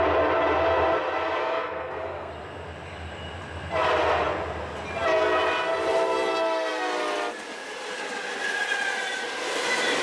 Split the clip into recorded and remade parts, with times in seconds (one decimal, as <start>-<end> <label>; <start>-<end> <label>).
0.0-1.4 recorded; 1.4-2.3 remade; 2.3-10.0 recorded

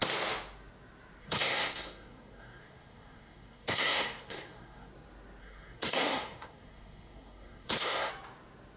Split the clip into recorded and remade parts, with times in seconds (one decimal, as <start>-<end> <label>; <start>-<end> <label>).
0.0-1.2 recorded; 1.2-4.9 remade; 4.9-5.4 recorded; 5.4-8.1 remade; 8.1-8.8 recorded

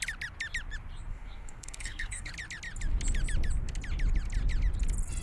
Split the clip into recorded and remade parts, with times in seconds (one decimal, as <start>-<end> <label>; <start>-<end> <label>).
0.0-1.1 recorded; 1.1-2.3 remade; 2.3-5.2 recorded

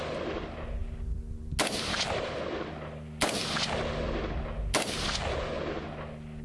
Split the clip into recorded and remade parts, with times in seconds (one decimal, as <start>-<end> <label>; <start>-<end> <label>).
0.0-6.4 recorded

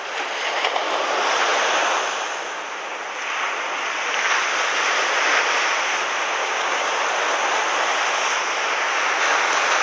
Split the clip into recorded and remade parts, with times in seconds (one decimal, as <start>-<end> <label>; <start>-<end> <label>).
0.0-6.4 recorded; 6.4-6.9 remade; 6.9-9.8 recorded

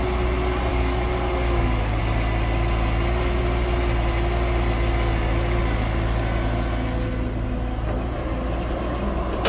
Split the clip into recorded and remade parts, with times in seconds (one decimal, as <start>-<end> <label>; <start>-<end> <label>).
0.0-0.7 recorded; 0.7-2.0 remade; 2.0-9.5 recorded

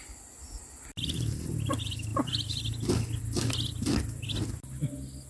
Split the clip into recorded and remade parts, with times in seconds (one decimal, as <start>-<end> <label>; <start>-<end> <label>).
0.0-5.3 recorded